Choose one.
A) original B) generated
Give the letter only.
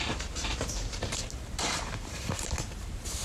B